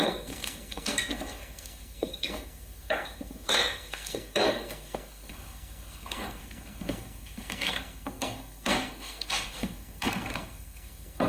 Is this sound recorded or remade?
remade